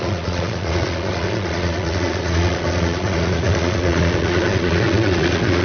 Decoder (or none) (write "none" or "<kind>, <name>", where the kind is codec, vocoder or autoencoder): vocoder, Vocos